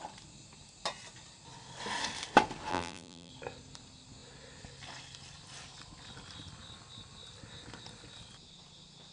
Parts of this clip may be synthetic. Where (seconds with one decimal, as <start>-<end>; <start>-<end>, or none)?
2.7-3.3